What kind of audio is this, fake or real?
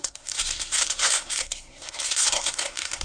fake